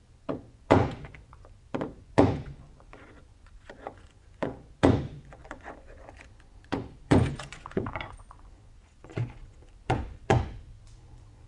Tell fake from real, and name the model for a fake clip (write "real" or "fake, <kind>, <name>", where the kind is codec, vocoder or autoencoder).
fake, vocoder, Vocos